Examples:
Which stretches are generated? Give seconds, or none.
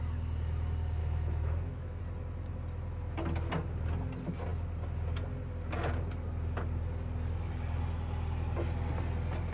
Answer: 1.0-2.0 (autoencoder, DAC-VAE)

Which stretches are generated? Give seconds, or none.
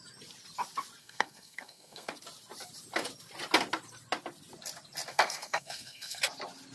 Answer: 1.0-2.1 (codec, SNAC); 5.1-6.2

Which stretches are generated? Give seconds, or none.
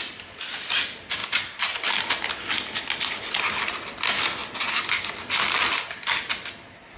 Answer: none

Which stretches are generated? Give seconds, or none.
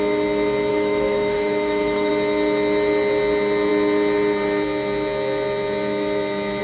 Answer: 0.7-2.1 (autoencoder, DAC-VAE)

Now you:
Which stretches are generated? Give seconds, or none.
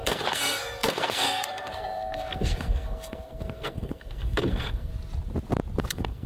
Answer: 0.0-4.9 (codec, SNAC); 5.8-6.3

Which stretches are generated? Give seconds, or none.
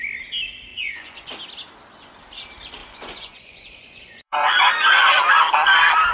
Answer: 0.7-1.3 (vocoder, Vocos); 2.8-5.4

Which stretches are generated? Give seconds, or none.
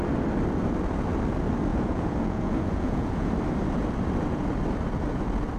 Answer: 1.7-3.3 (vocoder, Vocos)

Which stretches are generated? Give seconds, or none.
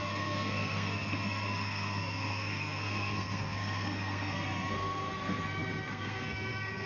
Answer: 0.0-6.9 (codec, SNAC)